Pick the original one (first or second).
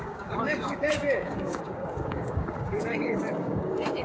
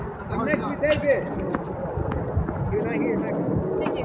second